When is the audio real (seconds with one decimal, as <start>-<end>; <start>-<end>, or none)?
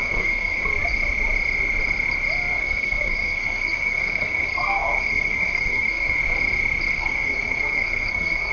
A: 0.7-2.5; 6.2-6.9